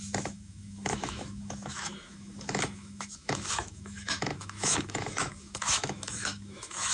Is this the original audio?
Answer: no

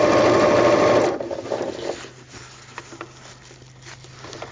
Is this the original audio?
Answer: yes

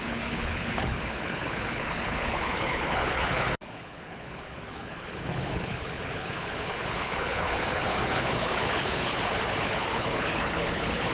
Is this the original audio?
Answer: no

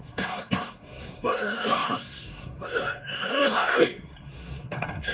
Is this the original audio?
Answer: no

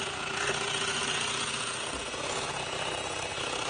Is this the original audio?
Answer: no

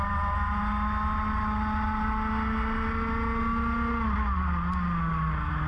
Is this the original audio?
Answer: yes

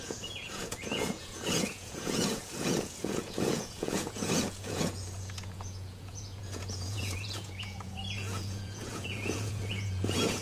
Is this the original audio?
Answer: no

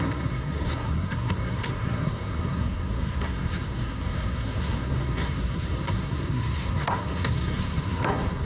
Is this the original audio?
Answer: no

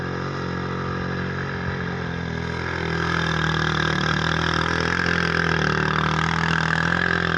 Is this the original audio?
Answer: yes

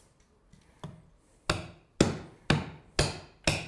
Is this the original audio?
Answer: yes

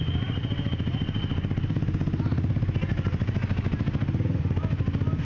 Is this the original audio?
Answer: yes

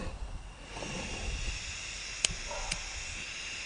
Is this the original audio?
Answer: yes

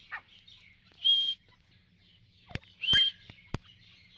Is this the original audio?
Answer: yes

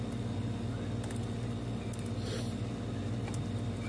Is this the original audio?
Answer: yes